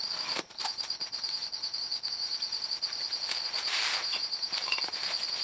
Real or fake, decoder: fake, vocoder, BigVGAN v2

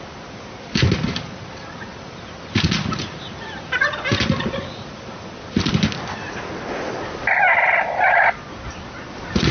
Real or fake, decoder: real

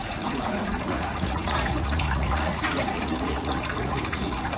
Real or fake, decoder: fake, vocoder, Vocos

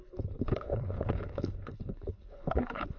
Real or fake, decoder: fake, codec, HILCodec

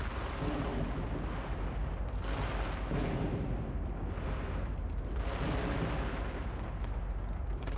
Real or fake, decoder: real